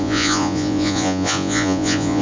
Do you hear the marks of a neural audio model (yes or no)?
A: yes